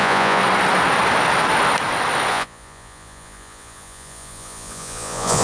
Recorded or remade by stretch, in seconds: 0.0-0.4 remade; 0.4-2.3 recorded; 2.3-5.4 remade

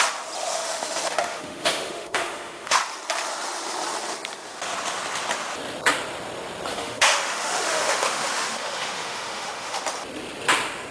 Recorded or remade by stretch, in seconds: 0.0-0.4 recorded; 0.4-2.8 remade; 2.8-6.7 recorded; 6.7-9.8 remade; 9.8-10.9 recorded